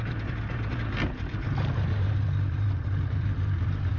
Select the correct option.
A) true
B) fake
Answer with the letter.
A